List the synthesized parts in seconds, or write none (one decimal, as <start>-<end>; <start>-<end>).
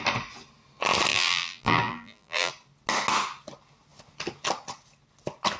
1.1-2.5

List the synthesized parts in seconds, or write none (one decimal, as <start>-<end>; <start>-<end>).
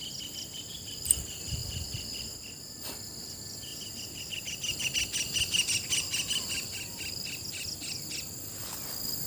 none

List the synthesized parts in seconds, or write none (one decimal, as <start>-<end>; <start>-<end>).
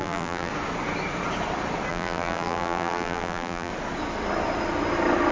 0.0-0.5; 1.9-3.7